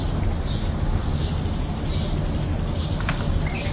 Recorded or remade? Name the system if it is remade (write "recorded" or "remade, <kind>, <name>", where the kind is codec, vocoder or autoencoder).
recorded